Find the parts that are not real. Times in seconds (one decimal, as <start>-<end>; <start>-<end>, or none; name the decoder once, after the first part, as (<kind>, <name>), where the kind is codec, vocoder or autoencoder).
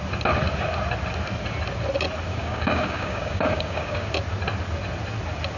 2.3-4.1 (codec, DAC)